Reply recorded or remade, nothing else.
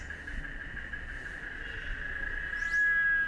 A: recorded